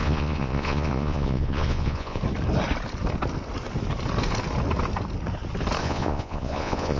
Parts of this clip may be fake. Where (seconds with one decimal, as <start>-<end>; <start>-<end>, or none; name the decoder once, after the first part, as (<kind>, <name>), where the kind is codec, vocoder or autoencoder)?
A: 0.0-2.2 (vocoder, Vocos); 5.8-7.0